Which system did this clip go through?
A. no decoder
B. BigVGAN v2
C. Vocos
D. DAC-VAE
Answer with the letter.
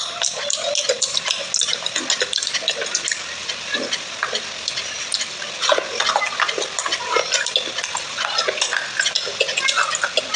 A